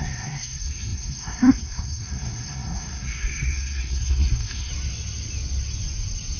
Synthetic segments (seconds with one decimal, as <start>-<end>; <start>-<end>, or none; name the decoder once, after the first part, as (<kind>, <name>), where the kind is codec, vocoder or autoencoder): 0.0-4.7 (codec, SNAC)